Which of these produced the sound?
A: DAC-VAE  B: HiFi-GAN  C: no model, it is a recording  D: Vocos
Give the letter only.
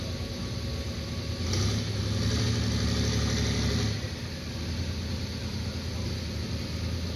C